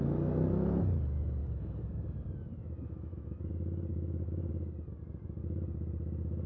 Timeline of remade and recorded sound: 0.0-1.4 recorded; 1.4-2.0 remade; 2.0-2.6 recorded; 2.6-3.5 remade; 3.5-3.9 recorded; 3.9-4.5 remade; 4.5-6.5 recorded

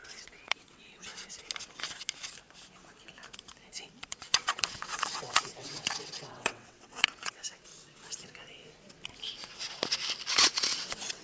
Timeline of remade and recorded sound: 0.0-1.1 remade; 1.1-4.1 recorded; 4.1-7.7 remade; 7.7-10.3 recorded; 10.3-11.2 remade

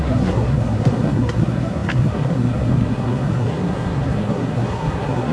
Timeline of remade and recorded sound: 0.0-5.3 remade

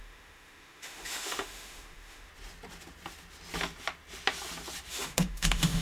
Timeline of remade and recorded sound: 0.0-2.3 remade; 2.3-4.9 recorded; 4.9-5.8 remade

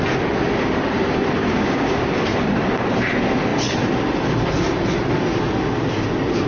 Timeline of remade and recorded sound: 0.0-1.4 recorded; 1.4-2.1 remade; 2.1-6.5 recorded